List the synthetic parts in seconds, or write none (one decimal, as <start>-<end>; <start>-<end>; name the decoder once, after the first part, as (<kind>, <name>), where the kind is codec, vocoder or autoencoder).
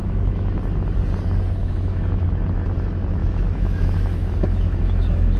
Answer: 0.0-0.6 (autoencoder, DAC-VAE); 1.6-2.3; 3.2-5.4